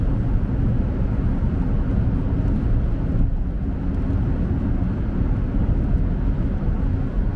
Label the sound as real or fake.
real